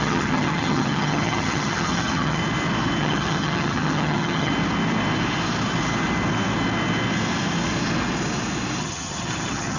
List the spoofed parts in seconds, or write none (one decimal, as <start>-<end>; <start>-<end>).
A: 0.0-2.4; 3.0-4.5; 8.8-9.8